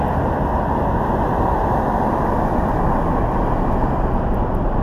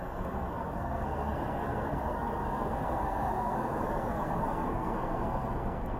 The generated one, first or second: second